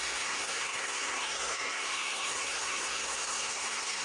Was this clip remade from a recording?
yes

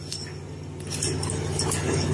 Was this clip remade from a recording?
no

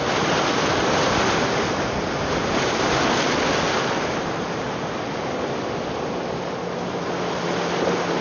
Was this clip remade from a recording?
no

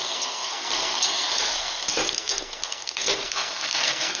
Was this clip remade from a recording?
yes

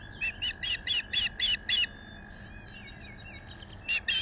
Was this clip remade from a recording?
no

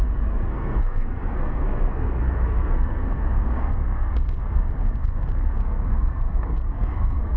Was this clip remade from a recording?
yes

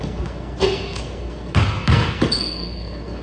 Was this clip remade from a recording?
yes